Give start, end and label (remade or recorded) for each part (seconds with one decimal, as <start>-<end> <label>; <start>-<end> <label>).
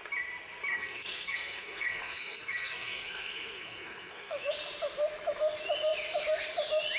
0.0-0.7 recorded; 0.7-4.5 remade; 4.5-7.0 recorded